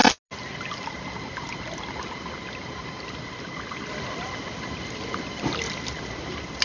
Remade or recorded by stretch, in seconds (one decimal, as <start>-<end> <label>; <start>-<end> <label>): 0.0-6.6 recorded